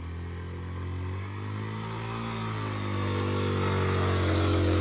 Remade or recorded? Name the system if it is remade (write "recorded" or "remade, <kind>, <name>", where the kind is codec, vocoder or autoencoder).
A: recorded